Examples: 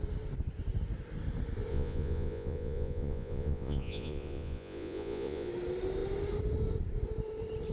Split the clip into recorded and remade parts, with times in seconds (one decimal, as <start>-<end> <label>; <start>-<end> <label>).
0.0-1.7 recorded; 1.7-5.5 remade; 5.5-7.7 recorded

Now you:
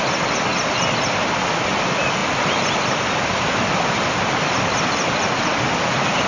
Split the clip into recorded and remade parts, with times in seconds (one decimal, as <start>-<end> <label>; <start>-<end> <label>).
0.0-6.3 recorded

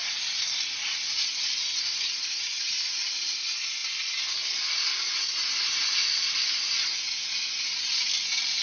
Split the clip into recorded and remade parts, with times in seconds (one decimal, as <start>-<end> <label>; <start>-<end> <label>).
0.0-8.6 recorded